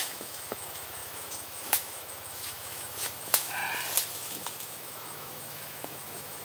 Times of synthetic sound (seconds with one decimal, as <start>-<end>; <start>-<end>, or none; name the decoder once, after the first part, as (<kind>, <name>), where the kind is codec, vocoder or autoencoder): 0.0-3.6 (autoencoder, DAC-VAE); 4.1-6.4